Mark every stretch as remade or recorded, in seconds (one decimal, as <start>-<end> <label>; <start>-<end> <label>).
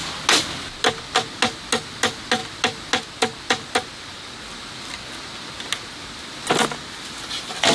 0.0-7.7 recorded